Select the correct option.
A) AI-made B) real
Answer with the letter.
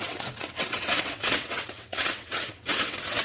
A